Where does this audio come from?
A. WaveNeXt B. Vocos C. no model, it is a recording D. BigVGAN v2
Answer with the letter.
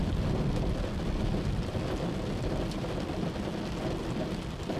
C